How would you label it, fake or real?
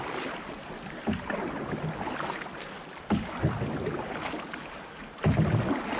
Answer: real